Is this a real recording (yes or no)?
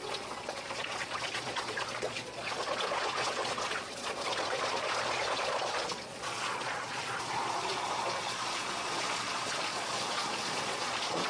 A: no